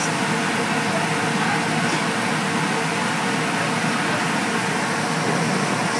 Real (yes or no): yes